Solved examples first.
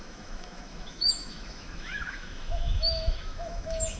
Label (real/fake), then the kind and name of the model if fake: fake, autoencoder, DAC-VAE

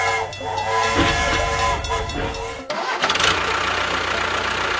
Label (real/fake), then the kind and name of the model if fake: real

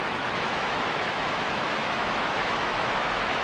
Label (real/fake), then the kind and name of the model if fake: fake, autoencoder, DAC-VAE